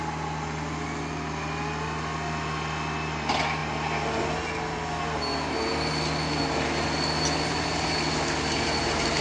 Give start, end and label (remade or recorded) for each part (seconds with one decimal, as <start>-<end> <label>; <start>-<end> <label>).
0.0-9.2 recorded